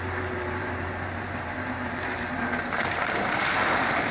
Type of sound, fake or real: fake